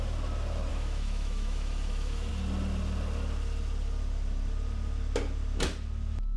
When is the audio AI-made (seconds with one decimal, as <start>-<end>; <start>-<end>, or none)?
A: 0.7-2.3